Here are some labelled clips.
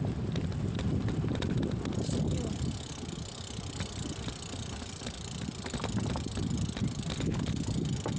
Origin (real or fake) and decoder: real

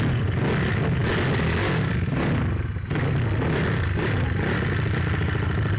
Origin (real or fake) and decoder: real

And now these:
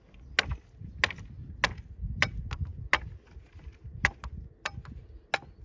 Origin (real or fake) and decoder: real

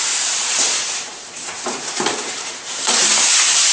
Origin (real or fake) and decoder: fake, vocoder, BigVGAN v2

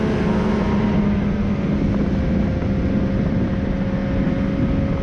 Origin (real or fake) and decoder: real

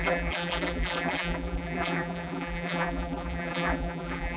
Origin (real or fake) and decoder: fake, vocoder, BigVGAN v2